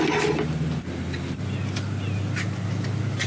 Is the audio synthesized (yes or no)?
no